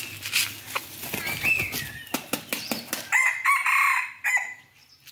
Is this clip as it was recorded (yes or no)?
yes